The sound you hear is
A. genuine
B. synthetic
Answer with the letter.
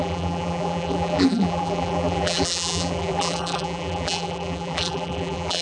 B